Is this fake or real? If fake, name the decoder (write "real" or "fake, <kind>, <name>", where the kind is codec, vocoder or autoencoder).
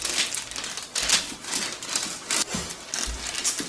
real